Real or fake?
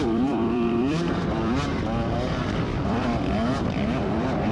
fake